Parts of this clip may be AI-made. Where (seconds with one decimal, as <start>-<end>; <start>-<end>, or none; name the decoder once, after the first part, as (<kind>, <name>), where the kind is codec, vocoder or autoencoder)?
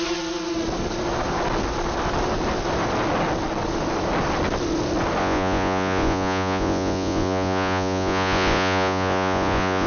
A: 5.2-9.9 (vocoder, Vocos)